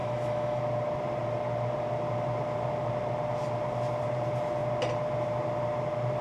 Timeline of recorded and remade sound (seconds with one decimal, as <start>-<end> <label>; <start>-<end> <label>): 0.0-0.6 remade; 0.6-6.2 recorded